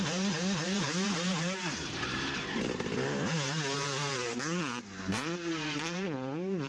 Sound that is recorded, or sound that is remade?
remade